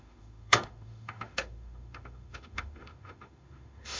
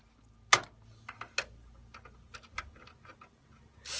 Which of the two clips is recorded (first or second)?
second